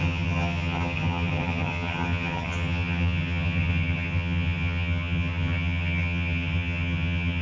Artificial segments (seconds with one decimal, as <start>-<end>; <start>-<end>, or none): 0.0-7.4